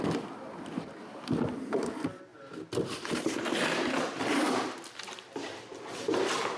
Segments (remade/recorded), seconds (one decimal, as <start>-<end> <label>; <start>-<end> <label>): 0.0-6.6 recorded